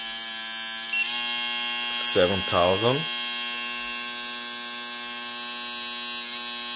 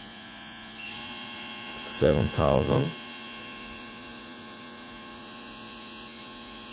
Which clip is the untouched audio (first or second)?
first